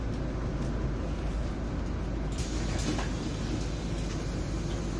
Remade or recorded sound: recorded